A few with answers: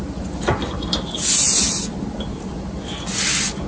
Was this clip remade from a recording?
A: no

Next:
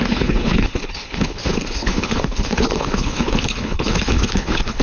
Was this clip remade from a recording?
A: yes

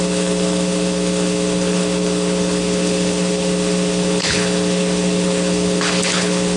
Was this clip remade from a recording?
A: yes